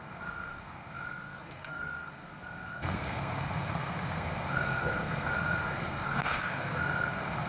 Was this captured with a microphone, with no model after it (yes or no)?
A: no